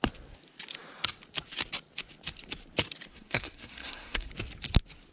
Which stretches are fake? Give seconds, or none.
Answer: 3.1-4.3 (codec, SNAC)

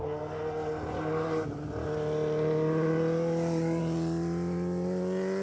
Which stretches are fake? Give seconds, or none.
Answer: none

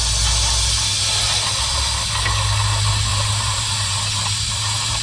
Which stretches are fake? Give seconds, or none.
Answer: 3.1-5.0 (vocoder, BigVGAN v2)